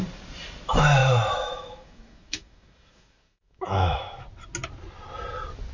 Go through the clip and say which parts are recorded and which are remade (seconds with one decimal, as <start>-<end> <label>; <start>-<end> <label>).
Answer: 0.0-1.0 recorded; 1.0-4.2 remade; 4.2-5.7 recorded